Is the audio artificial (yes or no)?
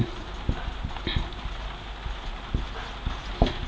no